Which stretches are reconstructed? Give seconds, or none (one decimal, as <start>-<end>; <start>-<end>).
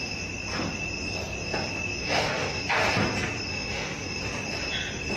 2.0-2.6; 3.5-4.2